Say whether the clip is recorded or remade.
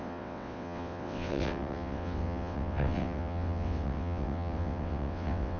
remade